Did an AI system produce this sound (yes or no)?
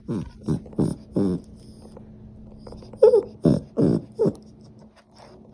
no